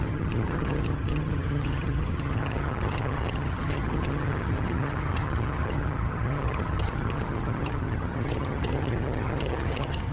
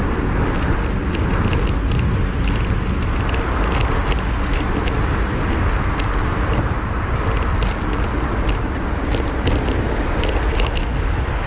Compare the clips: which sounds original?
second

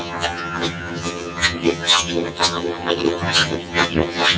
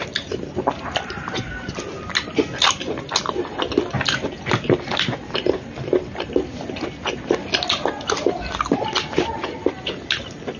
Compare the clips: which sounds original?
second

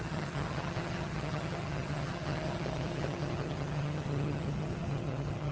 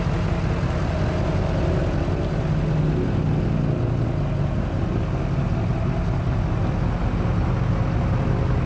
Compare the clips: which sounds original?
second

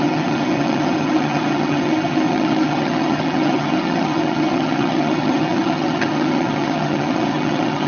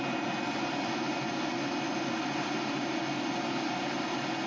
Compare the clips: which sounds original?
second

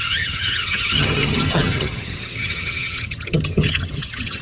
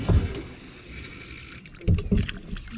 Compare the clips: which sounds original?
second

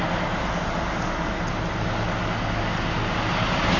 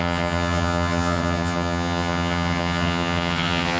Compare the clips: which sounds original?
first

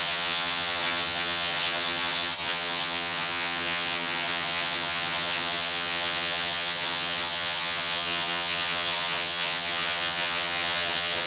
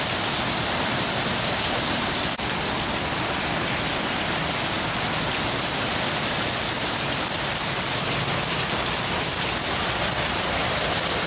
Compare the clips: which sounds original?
second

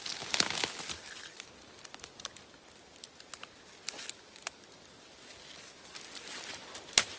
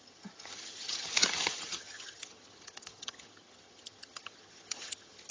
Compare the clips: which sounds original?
first